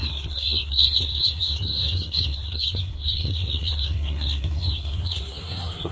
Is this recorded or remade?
remade